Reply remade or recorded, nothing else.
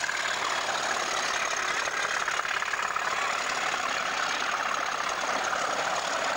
recorded